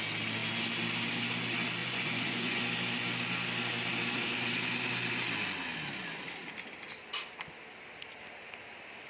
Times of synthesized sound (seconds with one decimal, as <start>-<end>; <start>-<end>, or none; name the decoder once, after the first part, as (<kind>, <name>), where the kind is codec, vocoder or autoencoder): 1.8-2.6 (vocoder, Vocos)